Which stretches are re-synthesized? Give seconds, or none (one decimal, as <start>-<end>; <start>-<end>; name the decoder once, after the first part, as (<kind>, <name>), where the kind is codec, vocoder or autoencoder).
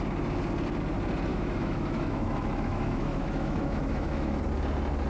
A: 1.3-4.4 (autoencoder, DAC-VAE)